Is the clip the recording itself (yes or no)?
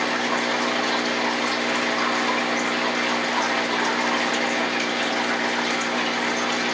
yes